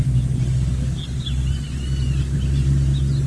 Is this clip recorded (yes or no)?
yes